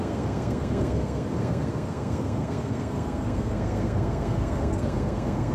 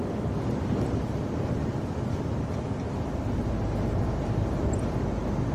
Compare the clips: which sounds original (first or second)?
second